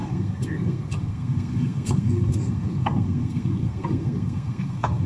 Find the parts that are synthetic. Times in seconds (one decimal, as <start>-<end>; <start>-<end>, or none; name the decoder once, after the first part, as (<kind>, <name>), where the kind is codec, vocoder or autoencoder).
0.0-5.1 (codec, SNAC)